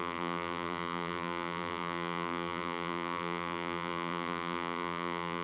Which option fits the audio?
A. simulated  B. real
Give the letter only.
A